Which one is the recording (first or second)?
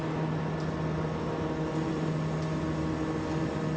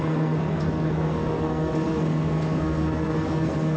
first